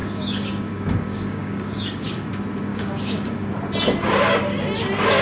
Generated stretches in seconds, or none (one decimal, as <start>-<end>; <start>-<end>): 0.0-2.3; 2.7-3.5